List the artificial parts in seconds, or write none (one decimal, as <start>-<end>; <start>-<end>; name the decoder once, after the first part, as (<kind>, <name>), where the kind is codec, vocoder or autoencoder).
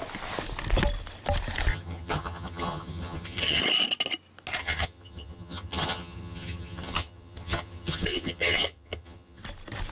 1.7-3.6 (vocoder, HiFi-GAN); 4.6-9.4